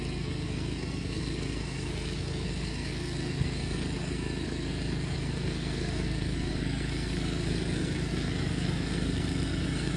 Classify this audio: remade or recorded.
remade